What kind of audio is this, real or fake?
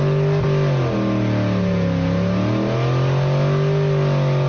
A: real